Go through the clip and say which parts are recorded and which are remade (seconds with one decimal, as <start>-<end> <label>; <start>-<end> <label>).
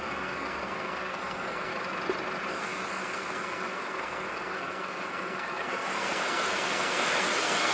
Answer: 0.0-1.7 remade; 1.7-2.5 recorded; 2.5-7.7 remade